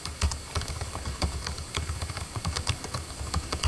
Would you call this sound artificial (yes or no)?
yes